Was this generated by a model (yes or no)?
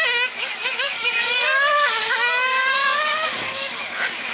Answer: yes